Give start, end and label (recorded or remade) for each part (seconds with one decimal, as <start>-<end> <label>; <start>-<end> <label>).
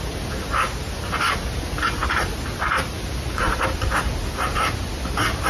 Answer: 0.0-5.5 recorded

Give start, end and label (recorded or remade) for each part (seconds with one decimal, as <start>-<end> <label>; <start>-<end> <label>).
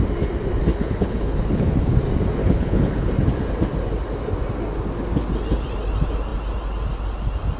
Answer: 0.0-0.7 recorded; 0.7-2.0 remade; 2.0-2.4 recorded; 2.4-3.1 remade; 3.1-7.6 recorded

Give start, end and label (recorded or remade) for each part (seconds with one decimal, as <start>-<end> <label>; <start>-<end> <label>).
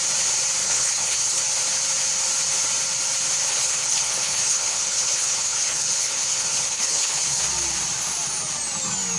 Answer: 0.0-0.6 recorded; 0.6-1.4 remade; 1.4-3.5 recorded; 3.5-7.4 remade; 7.4-9.2 recorded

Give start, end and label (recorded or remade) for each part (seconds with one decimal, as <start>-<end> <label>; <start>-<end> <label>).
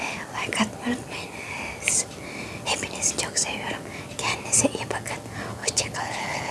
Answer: 0.0-5.6 recorded; 5.6-6.5 remade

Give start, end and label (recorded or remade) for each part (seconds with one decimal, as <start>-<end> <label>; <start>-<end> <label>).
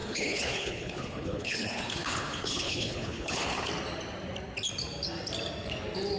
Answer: 0.0-3.7 remade; 3.7-6.2 recorded